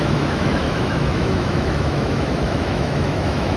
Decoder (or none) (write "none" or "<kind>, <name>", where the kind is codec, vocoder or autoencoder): autoencoder, DAC-VAE